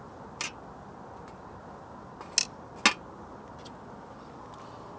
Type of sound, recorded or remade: recorded